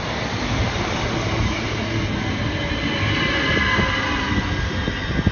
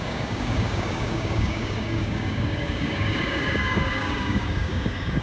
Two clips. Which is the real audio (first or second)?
first